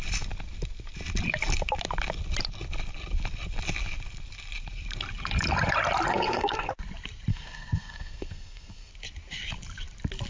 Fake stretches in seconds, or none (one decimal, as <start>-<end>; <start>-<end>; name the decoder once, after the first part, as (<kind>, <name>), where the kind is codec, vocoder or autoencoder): 6.1-6.7 (codec, SNAC); 7.3-8.9